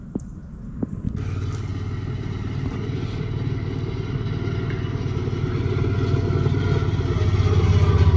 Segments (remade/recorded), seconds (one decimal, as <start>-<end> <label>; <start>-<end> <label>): 0.0-8.2 recorded